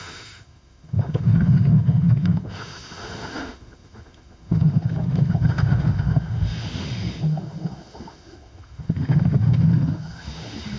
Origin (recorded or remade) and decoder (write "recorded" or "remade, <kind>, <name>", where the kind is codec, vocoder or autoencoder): remade, autoencoder, DAC-VAE